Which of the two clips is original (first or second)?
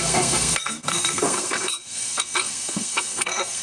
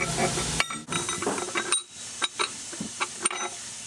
second